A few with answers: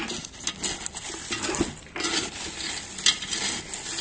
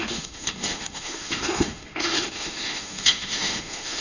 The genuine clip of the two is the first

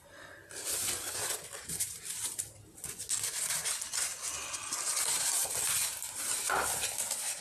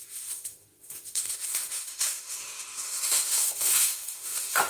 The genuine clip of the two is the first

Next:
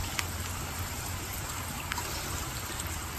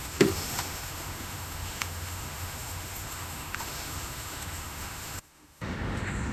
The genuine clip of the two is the first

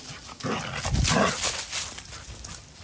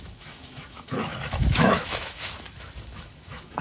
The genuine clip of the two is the first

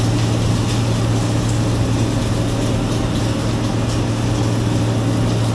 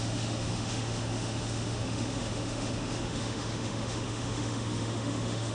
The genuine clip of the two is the first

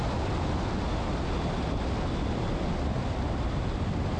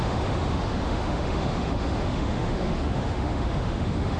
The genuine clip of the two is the first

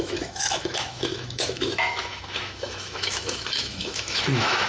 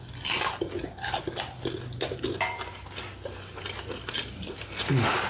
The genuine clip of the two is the second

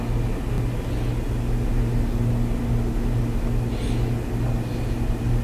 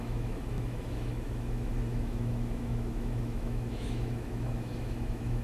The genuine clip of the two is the first